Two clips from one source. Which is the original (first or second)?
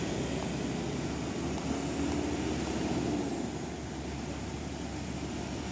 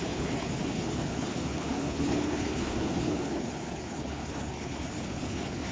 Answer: first